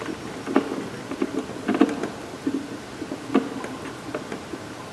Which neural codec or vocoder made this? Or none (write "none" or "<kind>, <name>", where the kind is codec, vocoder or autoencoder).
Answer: none